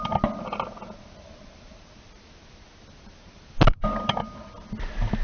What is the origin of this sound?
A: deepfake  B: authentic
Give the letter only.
B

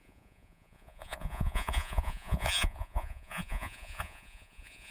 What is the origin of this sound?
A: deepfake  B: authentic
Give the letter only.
A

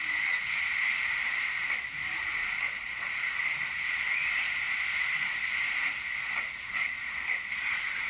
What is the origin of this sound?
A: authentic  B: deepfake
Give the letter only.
A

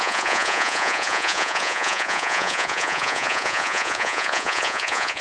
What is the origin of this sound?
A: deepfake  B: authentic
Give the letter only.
A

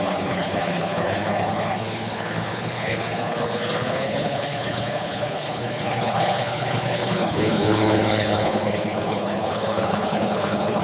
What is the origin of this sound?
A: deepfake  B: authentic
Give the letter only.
A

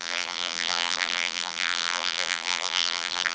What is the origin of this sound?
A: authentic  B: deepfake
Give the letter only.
B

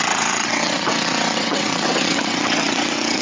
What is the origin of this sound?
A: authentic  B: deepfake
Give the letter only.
B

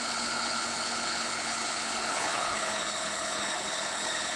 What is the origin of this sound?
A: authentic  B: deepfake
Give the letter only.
B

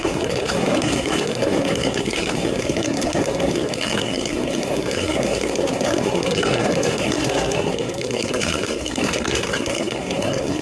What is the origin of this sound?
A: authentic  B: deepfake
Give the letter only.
B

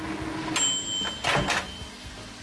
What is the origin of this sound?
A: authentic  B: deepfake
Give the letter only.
A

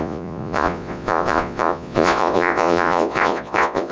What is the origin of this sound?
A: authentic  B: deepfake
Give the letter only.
B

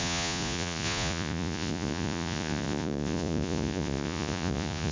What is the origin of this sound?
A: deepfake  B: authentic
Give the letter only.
A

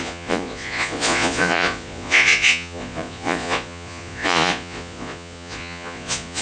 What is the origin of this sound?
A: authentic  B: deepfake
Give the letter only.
B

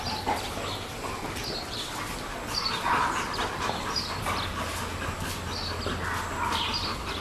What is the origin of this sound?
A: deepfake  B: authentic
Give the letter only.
B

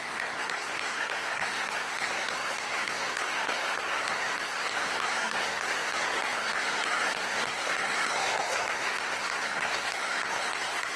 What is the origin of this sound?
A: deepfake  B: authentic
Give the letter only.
A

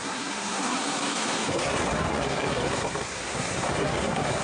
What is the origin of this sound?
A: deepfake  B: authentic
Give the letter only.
A